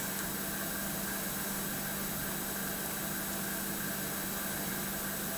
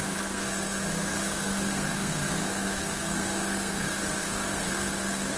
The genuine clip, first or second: first